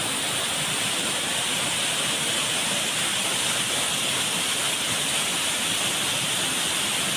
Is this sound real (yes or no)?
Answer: yes